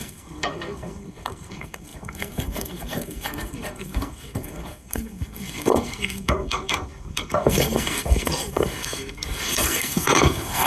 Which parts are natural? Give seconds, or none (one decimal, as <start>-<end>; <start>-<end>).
none

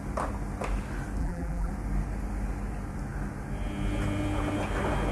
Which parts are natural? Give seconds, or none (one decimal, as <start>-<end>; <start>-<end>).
0.0-1.2; 1.7-5.1

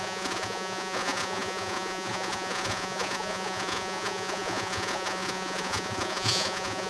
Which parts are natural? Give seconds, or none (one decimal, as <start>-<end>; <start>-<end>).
none

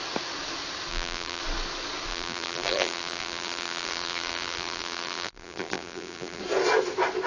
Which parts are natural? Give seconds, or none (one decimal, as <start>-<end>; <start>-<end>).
0.0-0.9; 1.4-2.1; 6.4-7.3

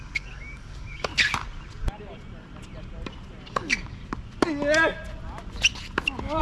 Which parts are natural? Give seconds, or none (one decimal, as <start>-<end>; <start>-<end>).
1.1-3.5; 4.0-6.4

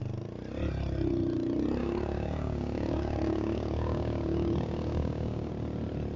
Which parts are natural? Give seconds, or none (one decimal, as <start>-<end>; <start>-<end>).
0.0-1.8; 5.5-6.2